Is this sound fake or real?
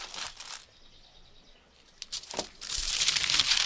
real